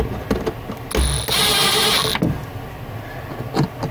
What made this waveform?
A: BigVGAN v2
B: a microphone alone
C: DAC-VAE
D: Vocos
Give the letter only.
B